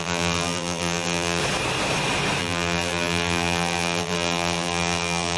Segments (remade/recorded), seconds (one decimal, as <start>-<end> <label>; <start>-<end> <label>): 0.0-1.4 remade; 1.4-2.4 recorded; 2.4-5.4 remade